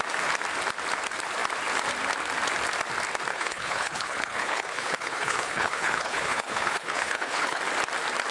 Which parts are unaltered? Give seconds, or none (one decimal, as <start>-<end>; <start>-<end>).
0.0-3.3; 7.6-8.3